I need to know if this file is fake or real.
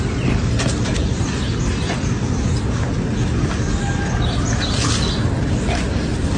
real